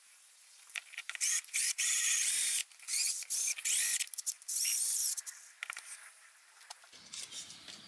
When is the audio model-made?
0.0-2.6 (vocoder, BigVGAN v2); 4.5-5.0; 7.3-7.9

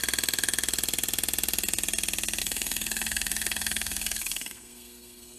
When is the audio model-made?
2.4-5.4 (codec, SNAC)

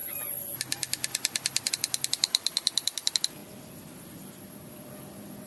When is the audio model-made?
1.7-3.4 (vocoder, BigVGAN v2); 4.9-5.5

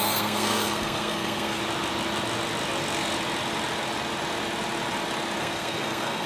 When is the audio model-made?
0.0-1.6 (codec, SNAC); 5.4-6.3

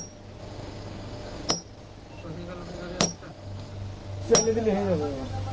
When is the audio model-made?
0.4-1.5 (codec, DAC); 2.6-3.7

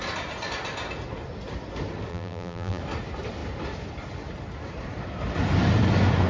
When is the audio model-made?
2.1-2.8 (vocoder, BigVGAN v2)

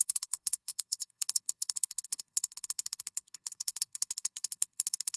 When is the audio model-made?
0.0-5.2 (codec, SNAC)

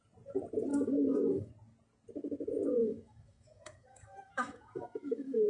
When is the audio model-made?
0.7-1.5 (autoencoder, DAC-VAE); 2.8-5.5